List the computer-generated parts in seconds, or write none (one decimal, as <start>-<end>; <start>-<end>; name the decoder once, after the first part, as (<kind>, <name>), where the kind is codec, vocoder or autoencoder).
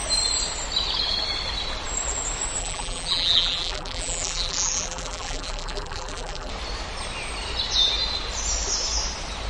2.6-6.5 (vocoder, BigVGAN v2)